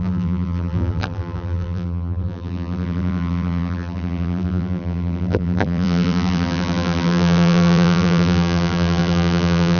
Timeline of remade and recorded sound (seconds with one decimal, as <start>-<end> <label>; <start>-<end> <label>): 0.0-9.8 remade